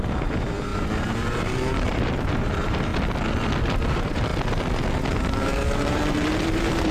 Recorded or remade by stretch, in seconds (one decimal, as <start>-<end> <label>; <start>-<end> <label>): 0.0-2.9 remade; 2.9-3.6 recorded; 3.6-4.3 remade; 4.3-5.0 recorded; 5.0-6.9 remade